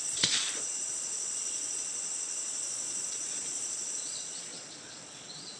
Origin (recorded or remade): remade